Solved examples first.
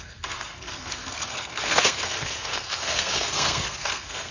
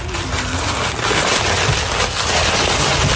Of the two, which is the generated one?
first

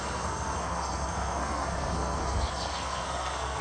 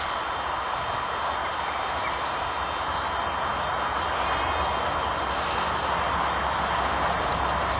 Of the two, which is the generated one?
first